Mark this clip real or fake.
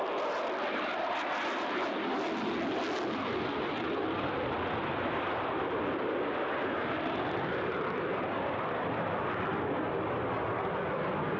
real